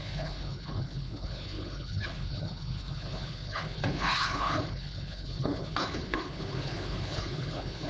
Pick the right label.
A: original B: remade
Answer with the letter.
B